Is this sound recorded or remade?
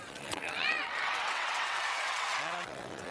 remade